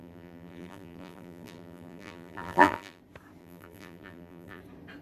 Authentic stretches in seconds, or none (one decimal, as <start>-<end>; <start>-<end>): 3.0-3.4; 4.6-5.0

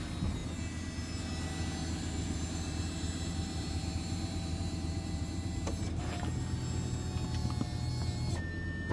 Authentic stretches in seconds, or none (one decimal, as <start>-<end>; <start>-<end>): 0.0-1.8; 6.0-8.9

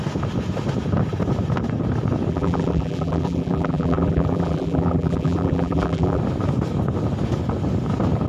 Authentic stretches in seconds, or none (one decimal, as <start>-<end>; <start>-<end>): 0.0-2.3; 6.2-8.3

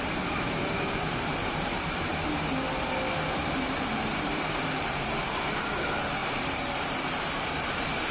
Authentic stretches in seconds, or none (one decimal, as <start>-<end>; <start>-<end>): 2.1-4.1

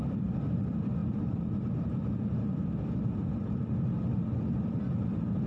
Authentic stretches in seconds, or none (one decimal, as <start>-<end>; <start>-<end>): none

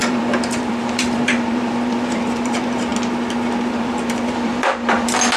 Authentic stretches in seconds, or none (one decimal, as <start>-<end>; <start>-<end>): 2.9-3.7

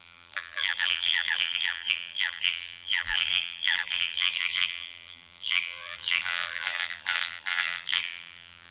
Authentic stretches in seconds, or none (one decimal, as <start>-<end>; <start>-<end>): none